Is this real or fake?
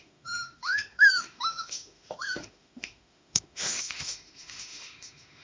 fake